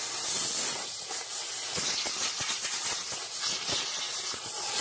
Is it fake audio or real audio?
real